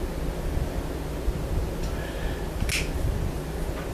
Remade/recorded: recorded